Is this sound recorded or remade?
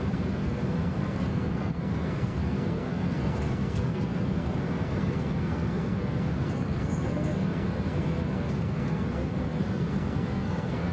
remade